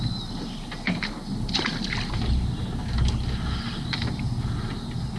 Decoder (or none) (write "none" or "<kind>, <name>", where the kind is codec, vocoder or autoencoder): none